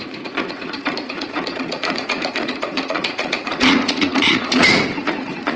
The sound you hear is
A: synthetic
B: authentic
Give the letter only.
A